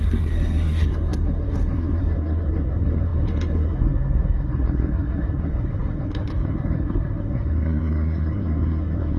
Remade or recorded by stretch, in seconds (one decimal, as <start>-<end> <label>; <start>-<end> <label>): 0.0-9.2 remade